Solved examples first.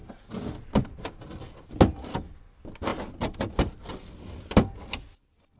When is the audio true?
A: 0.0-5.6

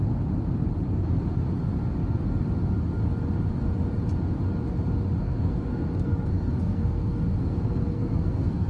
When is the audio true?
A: 0.0-5.2

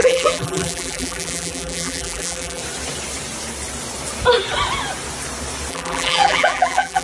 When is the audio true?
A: 2.6-5.7

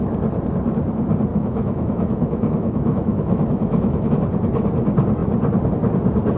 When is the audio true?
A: 0.0-1.3; 4.1-6.4